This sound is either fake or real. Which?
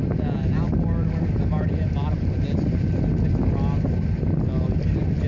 real